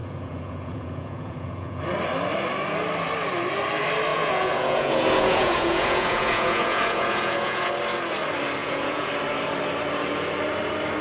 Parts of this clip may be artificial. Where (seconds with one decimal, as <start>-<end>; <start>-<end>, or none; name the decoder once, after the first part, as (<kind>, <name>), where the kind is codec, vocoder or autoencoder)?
0.0-1.8 (vocoder, Vocos); 4.1-7.7; 8.6-9.1